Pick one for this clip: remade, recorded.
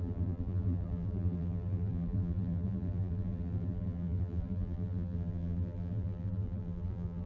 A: remade